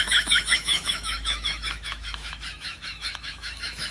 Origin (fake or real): fake